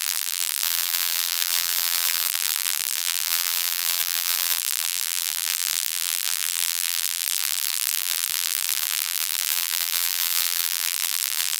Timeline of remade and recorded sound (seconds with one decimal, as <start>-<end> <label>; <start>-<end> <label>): 0.0-11.6 remade